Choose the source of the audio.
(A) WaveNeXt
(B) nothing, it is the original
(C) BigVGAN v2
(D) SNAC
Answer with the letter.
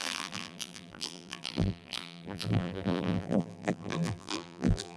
C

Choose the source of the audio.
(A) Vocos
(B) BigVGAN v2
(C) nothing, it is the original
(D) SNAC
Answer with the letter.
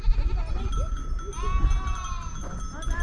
C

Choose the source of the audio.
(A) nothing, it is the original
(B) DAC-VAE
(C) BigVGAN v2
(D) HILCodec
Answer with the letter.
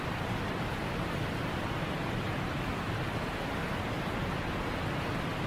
A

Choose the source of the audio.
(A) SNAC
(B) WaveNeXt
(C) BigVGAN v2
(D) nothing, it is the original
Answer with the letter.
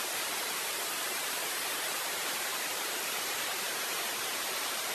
C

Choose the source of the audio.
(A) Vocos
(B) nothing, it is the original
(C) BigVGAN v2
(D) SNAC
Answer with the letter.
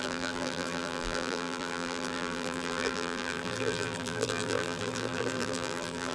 C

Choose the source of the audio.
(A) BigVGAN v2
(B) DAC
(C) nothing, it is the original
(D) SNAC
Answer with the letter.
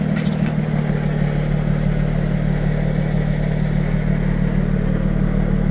C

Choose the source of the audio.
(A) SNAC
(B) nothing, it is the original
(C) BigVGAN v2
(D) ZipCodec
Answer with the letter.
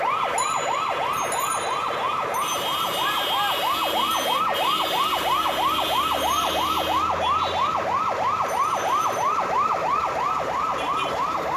B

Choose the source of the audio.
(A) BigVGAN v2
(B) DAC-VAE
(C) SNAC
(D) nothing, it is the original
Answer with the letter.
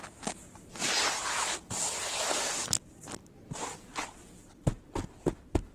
D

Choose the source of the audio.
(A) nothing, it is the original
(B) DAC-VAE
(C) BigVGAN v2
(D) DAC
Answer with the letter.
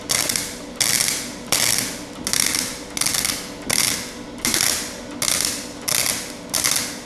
A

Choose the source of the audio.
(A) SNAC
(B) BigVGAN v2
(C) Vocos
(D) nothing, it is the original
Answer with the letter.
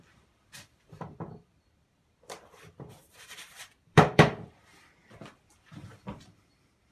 B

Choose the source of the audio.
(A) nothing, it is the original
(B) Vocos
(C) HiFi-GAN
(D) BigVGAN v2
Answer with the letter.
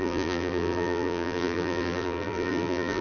D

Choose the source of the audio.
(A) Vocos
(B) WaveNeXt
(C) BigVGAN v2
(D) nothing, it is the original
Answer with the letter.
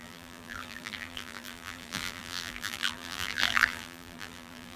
C